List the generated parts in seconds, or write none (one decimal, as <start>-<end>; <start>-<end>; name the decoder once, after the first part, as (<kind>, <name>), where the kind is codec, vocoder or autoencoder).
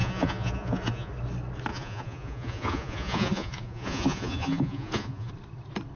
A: 0.0-1.1 (vocoder, Vocos); 1.7-5.3